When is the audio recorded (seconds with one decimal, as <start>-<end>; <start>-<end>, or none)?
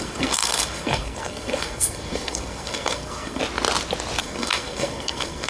3.4-4.2